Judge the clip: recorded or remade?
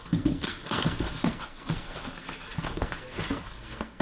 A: remade